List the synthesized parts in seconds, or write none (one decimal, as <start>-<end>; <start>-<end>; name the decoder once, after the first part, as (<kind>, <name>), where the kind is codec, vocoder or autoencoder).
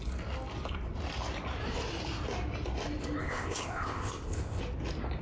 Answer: 3.2-4.6 (codec, ZipCodec)